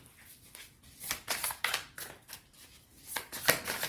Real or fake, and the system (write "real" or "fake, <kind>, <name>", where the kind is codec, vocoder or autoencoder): real